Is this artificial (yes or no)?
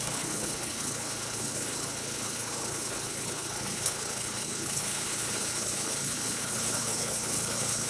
yes